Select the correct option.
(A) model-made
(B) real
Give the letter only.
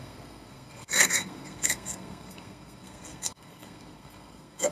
A